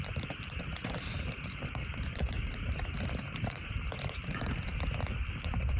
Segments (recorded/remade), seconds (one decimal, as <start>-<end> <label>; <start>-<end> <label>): 0.0-4.7 remade; 4.7-5.2 recorded; 5.2-5.8 remade